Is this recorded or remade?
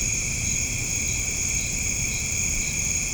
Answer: recorded